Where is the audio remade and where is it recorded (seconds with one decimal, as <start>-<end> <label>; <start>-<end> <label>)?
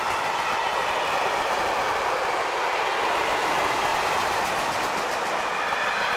0.0-6.2 recorded